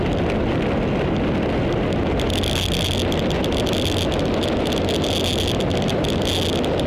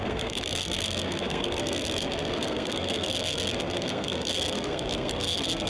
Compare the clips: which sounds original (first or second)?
first